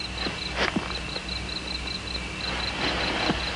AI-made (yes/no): no